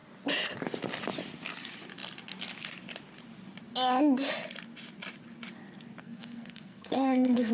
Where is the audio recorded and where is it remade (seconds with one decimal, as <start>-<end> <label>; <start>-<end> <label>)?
0.0-6.0 recorded; 6.0-7.5 remade